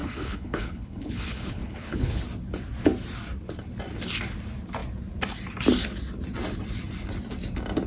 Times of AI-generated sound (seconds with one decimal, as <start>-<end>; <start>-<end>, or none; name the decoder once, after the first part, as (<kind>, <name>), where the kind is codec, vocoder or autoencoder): 0.0-2.2 (codec, HILCodec)

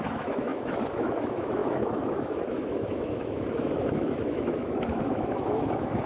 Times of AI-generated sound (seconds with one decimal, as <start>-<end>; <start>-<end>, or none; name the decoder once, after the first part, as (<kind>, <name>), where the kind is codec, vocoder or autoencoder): 0.0-6.1 (autoencoder, DAC-VAE)